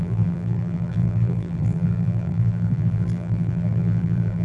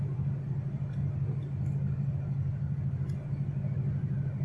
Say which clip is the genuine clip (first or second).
second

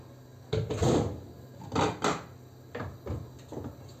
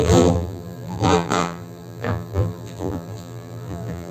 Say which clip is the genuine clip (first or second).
first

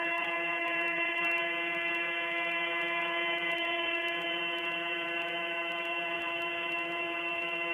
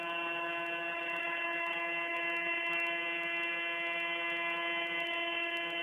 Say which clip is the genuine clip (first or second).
second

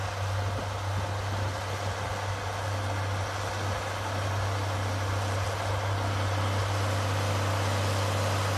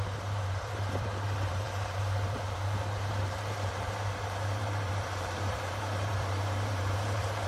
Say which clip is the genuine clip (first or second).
first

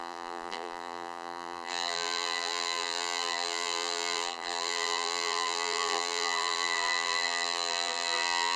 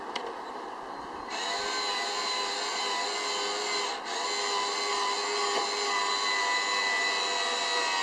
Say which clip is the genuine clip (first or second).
second